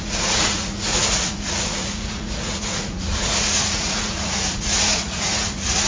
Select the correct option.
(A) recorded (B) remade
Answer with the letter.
B